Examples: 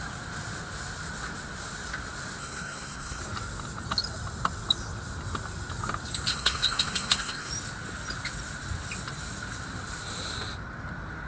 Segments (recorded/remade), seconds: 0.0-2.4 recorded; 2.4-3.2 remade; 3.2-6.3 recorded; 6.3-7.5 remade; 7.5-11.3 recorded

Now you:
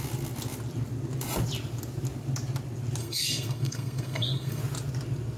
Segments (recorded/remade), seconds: 0.0-3.0 recorded; 3.0-4.6 remade; 4.6-5.4 recorded